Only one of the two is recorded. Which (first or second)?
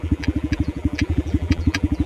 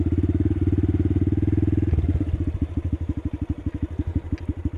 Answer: second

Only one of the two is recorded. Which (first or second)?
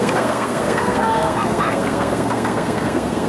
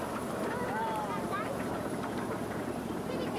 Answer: second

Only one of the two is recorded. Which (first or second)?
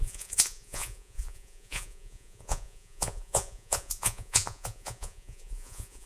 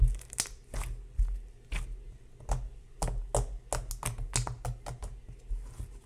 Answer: second